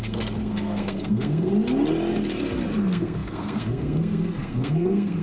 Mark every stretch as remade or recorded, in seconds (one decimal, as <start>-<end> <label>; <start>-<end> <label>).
0.0-1.5 remade; 1.5-2.8 recorded; 2.8-5.2 remade